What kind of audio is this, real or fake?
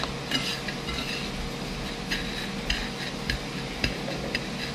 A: real